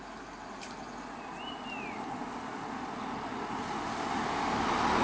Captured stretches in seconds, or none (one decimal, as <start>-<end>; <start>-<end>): 0.0-5.0